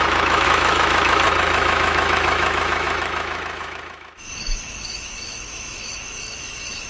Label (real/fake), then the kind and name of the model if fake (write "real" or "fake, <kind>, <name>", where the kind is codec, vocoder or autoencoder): fake, autoencoder, DAC-VAE